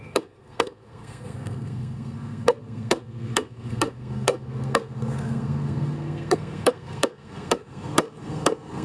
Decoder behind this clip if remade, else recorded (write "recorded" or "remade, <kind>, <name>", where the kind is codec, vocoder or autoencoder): remade, codec, SNAC